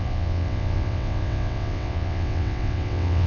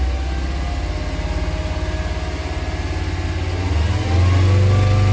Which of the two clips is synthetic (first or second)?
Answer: first